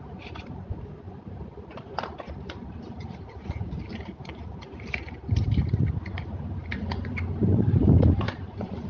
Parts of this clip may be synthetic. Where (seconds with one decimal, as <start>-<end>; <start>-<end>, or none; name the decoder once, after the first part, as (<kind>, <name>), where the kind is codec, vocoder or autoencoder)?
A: 0.0-4.5 (vocoder, BigVGAN v2); 5.3-8.9